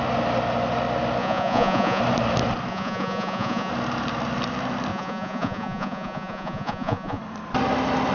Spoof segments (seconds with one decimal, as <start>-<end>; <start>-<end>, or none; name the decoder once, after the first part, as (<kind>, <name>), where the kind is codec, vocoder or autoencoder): 1.2-2.0 (vocoder, Vocos); 2.7-3.7; 4.9-7.2